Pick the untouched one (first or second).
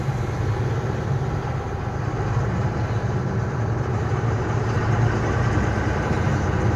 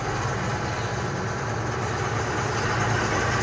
second